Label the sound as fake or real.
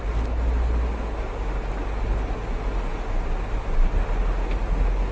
real